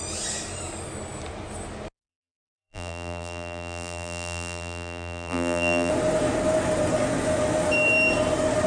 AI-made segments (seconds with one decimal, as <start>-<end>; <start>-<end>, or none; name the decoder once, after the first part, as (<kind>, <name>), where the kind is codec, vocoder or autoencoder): 2.1-5.9 (vocoder, BigVGAN v2)